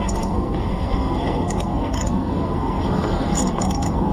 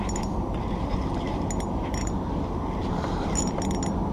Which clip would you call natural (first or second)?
second